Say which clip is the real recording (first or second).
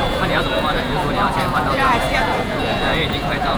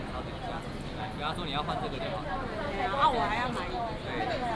second